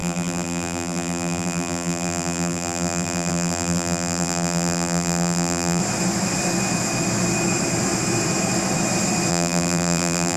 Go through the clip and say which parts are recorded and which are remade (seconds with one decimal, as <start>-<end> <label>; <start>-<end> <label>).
0.0-5.8 remade; 5.8-9.3 recorded; 9.3-10.4 remade